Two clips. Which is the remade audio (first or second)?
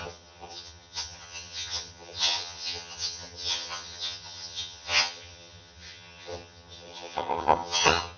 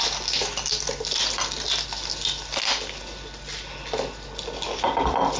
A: first